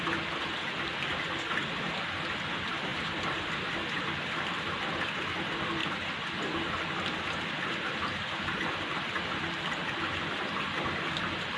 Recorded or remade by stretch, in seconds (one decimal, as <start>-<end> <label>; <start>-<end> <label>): 0.0-2.9 recorded; 2.9-3.5 remade; 3.5-5.8 recorded; 5.8-6.4 remade; 6.4-11.6 recorded